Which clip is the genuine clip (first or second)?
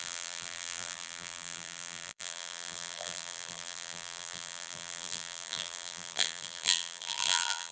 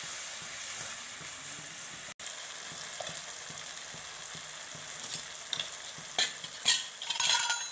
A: second